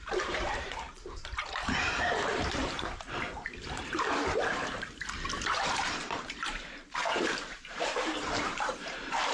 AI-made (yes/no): yes